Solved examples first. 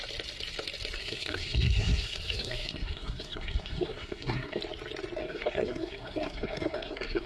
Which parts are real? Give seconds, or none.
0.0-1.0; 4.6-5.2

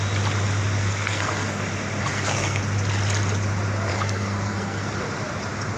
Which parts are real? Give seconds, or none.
0.0-0.8; 1.6-2.0; 2.6-3.9; 4.9-5.8

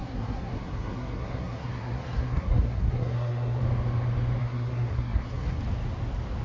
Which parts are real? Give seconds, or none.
3.6-4.4; 5.6-6.4

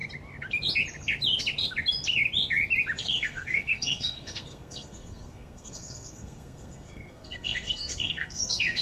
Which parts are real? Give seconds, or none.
0.0-3.0

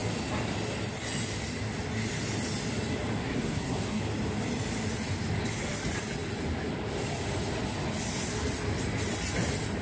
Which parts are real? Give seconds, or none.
0.0-3.2; 4.0-9.8